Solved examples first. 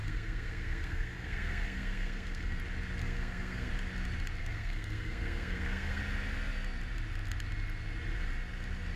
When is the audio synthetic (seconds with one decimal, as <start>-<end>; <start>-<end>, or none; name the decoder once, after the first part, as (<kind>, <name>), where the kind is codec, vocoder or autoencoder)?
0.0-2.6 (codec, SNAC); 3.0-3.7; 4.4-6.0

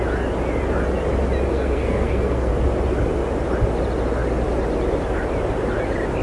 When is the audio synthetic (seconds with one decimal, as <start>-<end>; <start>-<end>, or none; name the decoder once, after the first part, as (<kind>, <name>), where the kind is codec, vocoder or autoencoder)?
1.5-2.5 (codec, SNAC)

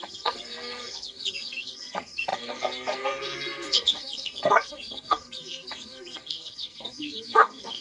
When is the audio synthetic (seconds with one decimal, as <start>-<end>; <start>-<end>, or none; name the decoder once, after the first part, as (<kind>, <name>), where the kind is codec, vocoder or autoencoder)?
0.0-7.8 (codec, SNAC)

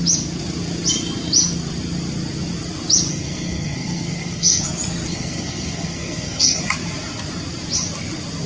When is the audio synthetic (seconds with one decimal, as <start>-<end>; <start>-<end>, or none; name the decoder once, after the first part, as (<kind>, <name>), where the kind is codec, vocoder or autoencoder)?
3.1-4.6 (codec, SNAC); 5.1-6.6

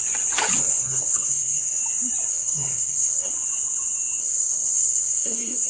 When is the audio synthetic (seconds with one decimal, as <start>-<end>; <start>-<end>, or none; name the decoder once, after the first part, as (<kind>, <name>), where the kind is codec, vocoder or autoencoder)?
0.6-1.8 (codec, SNAC); 2.3-3.3; 4.2-5.7